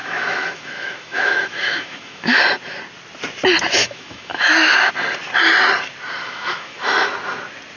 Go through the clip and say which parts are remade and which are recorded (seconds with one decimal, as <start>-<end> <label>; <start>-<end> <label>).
0.0-2.4 remade; 2.4-3.8 recorded; 3.8-4.9 remade; 4.9-6.2 recorded; 6.2-7.1 remade; 7.1-7.8 recorded